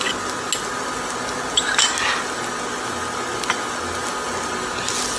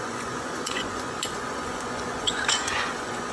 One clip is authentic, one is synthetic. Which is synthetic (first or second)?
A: second